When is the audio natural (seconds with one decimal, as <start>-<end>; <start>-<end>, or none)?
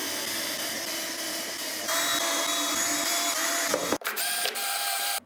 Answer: 0.0-0.9; 2.1-2.7